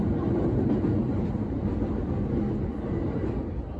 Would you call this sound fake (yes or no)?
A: no